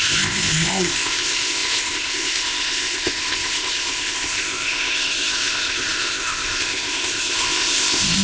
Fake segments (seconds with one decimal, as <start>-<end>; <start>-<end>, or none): 0.0-8.2